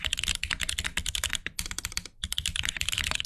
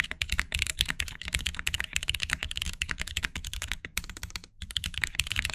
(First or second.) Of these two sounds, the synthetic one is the second